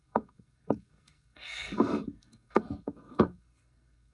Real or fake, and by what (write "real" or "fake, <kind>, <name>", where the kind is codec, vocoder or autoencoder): fake, codec, SNAC